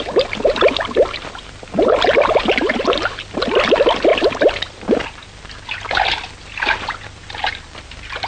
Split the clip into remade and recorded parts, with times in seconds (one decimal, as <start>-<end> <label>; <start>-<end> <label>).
0.0-8.3 recorded